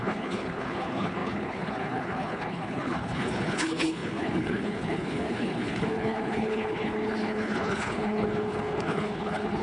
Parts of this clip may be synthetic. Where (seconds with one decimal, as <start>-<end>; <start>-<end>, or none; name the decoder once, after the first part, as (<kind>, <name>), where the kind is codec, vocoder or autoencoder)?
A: 0.0-9.6 (codec, HILCodec)